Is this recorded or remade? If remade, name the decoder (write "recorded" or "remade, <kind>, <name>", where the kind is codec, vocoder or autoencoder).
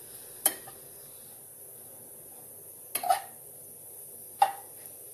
recorded